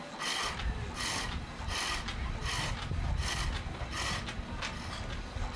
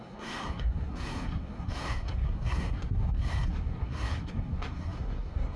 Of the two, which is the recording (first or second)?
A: first